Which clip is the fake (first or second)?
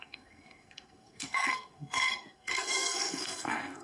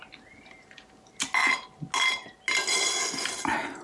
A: first